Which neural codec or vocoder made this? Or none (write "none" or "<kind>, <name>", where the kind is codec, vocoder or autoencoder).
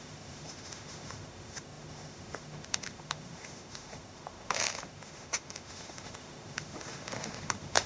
autoencoder, DAC-VAE